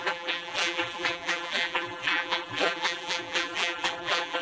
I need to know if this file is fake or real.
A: fake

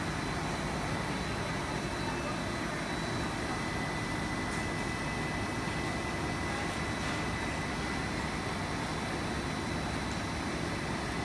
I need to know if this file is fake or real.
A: real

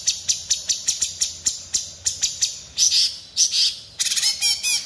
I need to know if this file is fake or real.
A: real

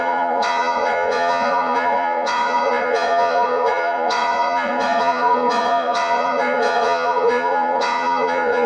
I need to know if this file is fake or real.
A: fake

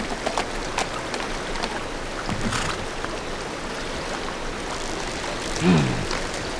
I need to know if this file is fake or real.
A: real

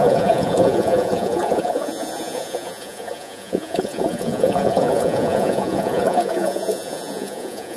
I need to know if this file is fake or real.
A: fake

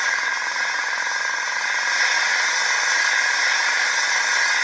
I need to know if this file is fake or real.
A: real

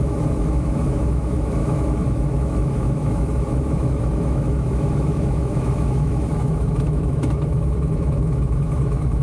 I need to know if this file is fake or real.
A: fake